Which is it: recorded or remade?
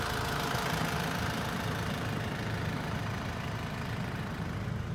remade